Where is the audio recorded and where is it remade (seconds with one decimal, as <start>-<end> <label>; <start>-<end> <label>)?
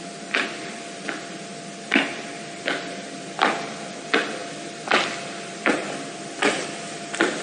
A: 0.0-7.4 recorded